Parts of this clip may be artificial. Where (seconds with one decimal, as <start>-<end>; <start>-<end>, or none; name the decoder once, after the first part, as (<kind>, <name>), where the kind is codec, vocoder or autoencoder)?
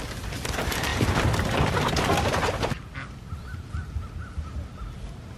none